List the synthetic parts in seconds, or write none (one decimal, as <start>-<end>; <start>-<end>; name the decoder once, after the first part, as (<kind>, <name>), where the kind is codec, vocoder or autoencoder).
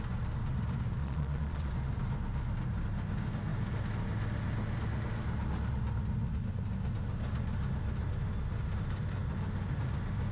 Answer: 1.0-1.7 (vocoder, Vocos)